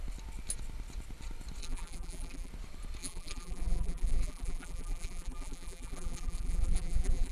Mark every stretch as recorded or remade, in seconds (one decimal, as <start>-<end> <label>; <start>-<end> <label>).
0.0-1.6 recorded; 1.6-2.5 remade; 2.5-3.0 recorded; 3.0-7.3 remade